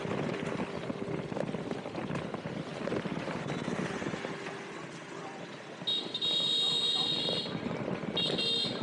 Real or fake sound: real